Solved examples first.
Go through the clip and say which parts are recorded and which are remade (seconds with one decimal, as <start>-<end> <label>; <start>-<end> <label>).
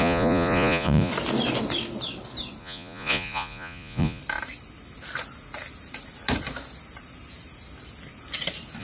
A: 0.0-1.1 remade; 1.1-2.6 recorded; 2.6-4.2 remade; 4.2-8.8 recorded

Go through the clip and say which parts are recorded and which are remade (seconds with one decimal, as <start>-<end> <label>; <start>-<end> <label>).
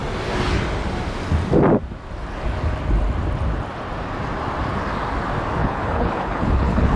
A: 0.0-5.6 recorded; 5.6-7.0 remade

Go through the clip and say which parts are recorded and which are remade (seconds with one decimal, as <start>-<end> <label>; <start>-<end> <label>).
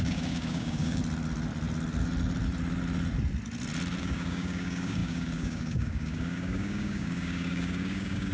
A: 0.0-1.0 remade; 1.0-4.0 recorded; 4.0-8.3 remade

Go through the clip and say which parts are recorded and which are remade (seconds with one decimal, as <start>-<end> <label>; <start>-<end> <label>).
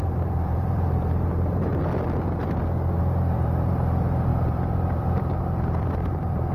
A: 0.0-1.7 remade; 1.7-3.0 recorded; 3.0-6.5 remade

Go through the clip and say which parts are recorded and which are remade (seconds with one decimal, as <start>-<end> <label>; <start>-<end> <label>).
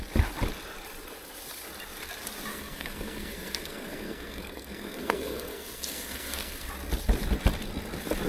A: 0.0-2.5 recorded; 2.5-6.7 remade; 6.7-8.3 recorded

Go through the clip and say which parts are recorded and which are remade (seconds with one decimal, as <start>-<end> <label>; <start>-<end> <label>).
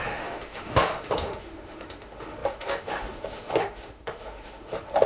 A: 0.0-5.1 remade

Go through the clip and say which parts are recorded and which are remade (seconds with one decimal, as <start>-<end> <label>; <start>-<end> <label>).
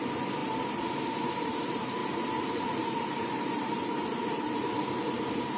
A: 0.0-5.6 remade